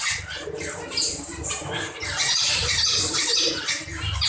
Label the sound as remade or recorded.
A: remade